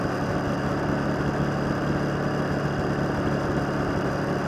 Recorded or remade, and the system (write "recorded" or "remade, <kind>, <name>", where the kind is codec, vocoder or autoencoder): recorded